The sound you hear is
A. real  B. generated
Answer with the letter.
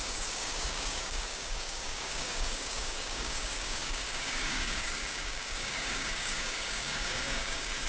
B